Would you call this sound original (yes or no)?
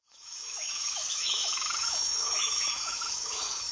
no